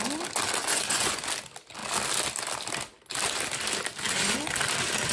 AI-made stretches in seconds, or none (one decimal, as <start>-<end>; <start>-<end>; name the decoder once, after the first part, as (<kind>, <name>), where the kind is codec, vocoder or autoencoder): 0.6-1.2 (vocoder, Vocos)